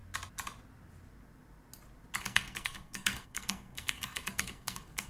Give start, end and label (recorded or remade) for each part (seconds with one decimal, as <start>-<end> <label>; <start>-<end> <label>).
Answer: 0.0-2.2 recorded; 2.2-5.1 remade